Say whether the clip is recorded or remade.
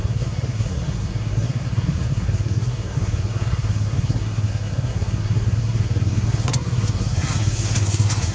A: remade